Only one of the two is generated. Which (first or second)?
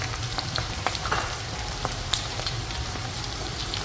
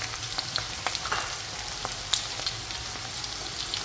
first